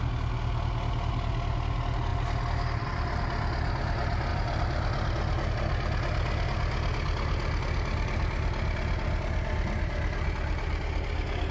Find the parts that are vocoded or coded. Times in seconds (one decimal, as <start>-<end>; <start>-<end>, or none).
none